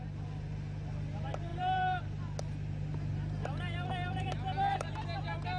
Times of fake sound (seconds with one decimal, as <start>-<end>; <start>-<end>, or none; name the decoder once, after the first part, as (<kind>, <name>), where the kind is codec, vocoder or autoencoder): 1.5-2.0 (vocoder, BigVGAN v2); 3.1-4.3